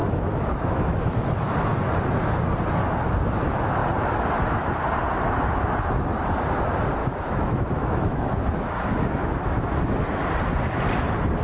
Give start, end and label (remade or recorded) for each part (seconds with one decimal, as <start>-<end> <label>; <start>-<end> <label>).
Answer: 0.0-1.7 remade; 1.7-7.0 recorded; 7.0-9.8 remade; 9.8-11.4 recorded